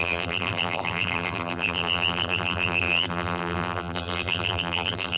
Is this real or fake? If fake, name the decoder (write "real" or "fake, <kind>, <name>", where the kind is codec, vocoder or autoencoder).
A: fake, vocoder, BigVGAN v2